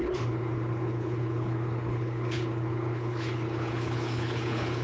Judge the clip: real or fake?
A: fake